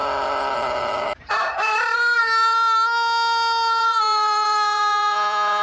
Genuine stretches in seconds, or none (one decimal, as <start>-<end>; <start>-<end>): 0.0-1.2; 2.2-3.8